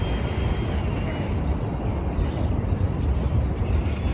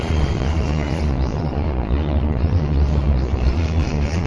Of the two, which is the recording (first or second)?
first